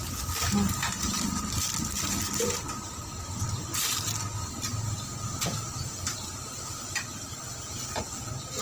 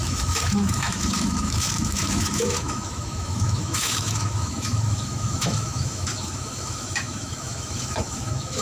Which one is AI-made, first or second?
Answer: second